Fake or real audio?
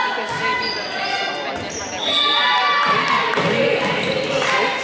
real